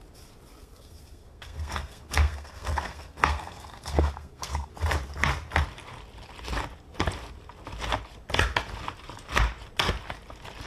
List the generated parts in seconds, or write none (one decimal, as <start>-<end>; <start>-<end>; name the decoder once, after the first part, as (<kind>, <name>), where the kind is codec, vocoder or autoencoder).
0.6-4.7 (codec, SNAC)